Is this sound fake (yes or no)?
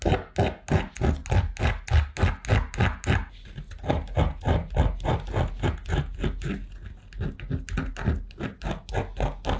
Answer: no